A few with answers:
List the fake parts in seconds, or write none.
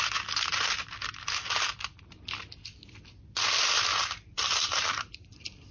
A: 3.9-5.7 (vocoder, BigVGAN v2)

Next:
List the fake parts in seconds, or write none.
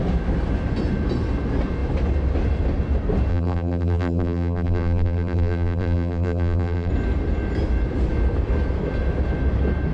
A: 3.3-6.9 (vocoder, BigVGAN v2)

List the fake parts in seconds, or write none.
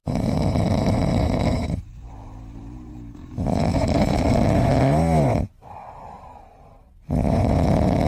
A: 0.0-2.9 (vocoder, BigVGAN v2); 3.7-4.3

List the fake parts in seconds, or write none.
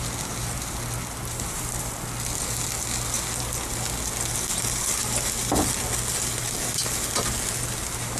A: none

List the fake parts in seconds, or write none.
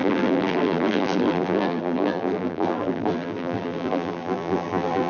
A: 0.0-5.1 (vocoder, BigVGAN v2)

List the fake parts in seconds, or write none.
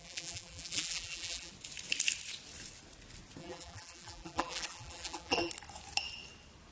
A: 0.0-1.5 (vocoder, BigVGAN v2); 3.4-5.5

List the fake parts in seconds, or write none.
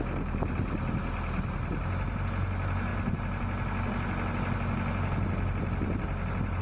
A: none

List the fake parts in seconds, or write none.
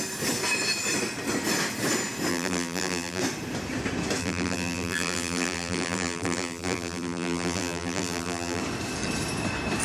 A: 2.3-3.2 (vocoder, BigVGAN v2); 4.2-8.6